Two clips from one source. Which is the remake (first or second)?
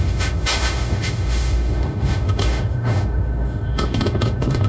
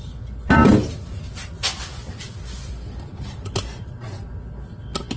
first